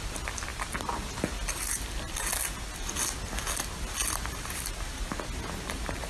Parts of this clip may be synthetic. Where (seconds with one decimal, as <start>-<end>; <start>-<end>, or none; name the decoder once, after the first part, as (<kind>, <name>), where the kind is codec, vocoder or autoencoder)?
4.0-5.0 (vocoder, BigVGAN v2)